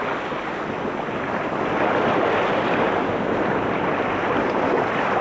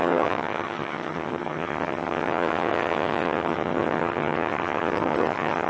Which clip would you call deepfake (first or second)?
second